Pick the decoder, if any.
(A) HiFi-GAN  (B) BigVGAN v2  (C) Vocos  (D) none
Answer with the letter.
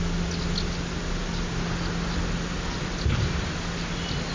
D